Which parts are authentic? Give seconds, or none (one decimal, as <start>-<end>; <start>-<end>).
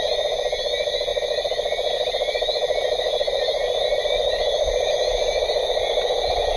0.0-6.6